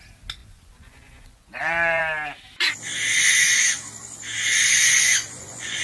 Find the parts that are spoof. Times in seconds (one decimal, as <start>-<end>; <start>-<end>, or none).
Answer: 0.4-2.0; 4.6-5.8